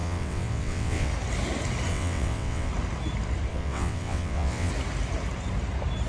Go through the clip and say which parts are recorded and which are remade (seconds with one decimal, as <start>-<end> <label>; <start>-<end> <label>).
0.0-1.1 remade; 1.1-1.9 recorded; 1.9-2.7 remade; 2.7-3.5 recorded; 3.5-4.7 remade; 4.7-6.1 recorded